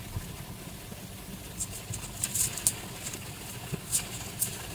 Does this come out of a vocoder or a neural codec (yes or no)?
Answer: no